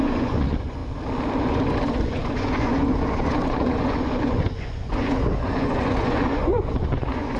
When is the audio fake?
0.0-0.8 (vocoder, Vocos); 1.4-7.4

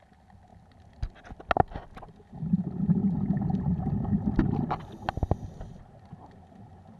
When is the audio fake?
none